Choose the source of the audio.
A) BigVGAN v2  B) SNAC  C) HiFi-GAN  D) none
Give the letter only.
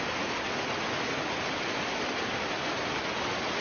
D